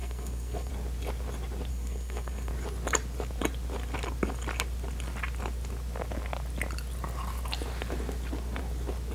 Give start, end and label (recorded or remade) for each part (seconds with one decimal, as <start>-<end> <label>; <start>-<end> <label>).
0.0-0.7 remade; 0.7-1.7 recorded; 1.7-2.5 remade; 2.5-9.1 recorded